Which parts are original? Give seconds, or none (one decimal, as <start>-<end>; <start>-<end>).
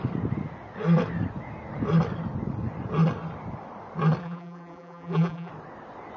0.0-4.2; 5.5-6.2